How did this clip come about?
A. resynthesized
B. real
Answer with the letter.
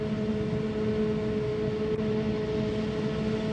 B